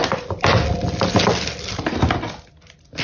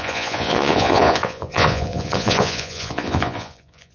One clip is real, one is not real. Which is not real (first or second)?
second